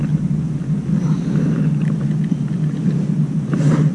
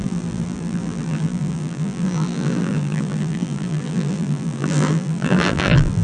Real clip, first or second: first